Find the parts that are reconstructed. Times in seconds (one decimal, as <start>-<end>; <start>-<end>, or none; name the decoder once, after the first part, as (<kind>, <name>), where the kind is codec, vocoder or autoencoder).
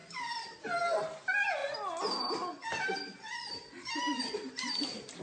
none